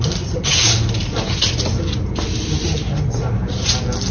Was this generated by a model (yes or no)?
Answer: no